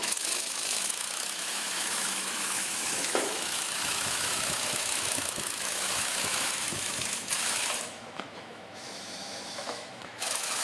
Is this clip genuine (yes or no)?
no